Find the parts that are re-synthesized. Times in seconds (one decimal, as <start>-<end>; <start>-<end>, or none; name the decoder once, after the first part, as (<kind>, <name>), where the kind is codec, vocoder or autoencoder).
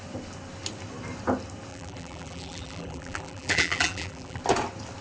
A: 1.7-4.4 (vocoder, BigVGAN v2)